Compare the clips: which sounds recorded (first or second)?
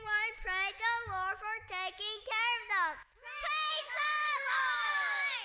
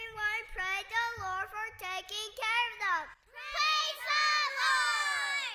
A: second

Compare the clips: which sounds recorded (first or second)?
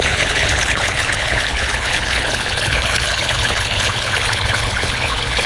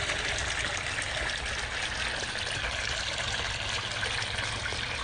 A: second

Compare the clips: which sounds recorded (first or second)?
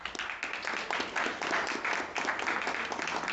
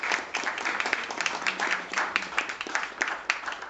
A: first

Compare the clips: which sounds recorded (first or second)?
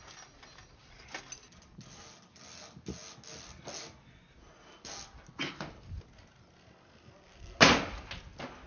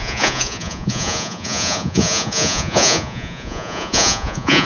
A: first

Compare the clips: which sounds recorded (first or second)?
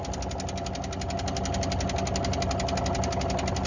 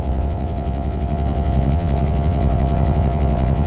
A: first